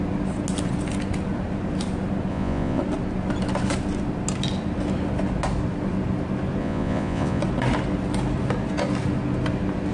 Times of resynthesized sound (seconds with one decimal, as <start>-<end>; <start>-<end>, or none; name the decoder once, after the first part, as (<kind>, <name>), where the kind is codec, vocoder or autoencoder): 2.3-2.8 (vocoder, Vocos); 6.6-7.4